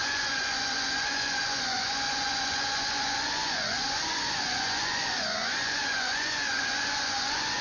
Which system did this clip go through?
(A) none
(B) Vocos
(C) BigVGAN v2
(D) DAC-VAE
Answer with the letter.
B